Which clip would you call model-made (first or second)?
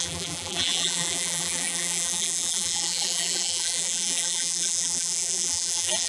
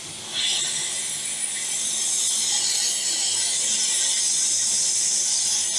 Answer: first